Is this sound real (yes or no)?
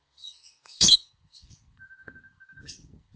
no